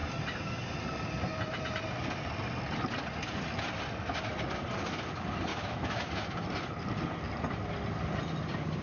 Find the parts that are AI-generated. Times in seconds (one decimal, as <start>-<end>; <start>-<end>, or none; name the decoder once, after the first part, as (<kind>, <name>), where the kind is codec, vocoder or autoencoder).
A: 5.5-6.1 (autoencoder, DAC-VAE)